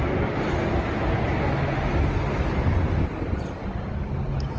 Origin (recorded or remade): recorded